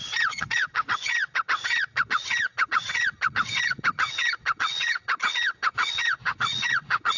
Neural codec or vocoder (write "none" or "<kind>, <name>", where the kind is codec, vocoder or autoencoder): vocoder, WaveNeXt